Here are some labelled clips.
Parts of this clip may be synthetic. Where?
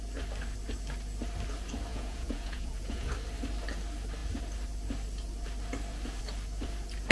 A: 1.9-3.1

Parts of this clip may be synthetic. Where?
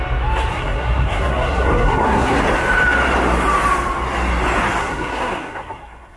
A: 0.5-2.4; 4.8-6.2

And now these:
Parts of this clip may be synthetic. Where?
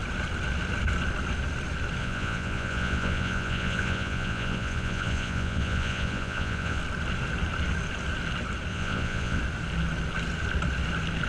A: 2.0-6.8; 8.7-9.4